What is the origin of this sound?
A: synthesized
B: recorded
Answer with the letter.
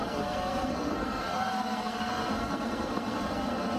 A